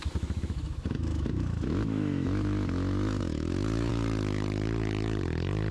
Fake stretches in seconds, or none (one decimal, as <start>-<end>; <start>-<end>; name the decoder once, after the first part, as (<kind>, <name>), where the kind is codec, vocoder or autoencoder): 0.0-3.9 (autoencoder, DAC-VAE)